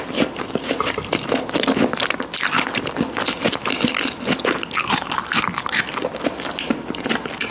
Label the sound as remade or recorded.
recorded